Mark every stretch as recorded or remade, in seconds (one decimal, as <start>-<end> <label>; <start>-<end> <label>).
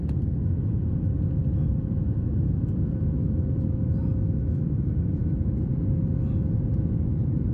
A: 0.0-1.4 recorded; 1.4-4.0 remade; 4.0-7.5 recorded